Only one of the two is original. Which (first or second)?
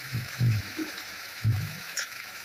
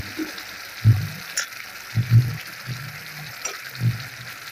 second